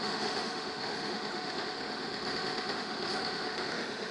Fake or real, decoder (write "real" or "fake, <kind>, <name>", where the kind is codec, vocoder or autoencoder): fake, autoencoder, DAC-VAE